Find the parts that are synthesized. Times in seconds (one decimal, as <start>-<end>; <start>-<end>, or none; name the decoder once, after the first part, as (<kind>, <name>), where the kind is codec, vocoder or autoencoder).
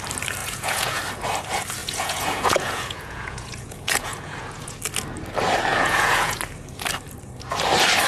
0.4-1.0 (vocoder, Vocos); 1.8-4.8; 5.7-6.4